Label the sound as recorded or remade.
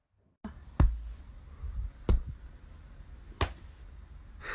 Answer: recorded